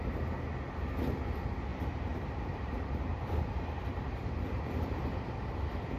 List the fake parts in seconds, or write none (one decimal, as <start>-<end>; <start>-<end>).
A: 1.7-5.3